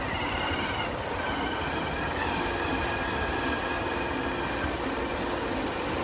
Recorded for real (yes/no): yes